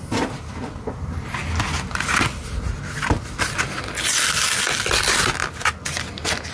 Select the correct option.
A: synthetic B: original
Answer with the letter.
B